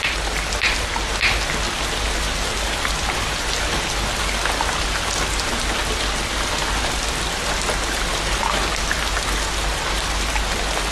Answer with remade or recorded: recorded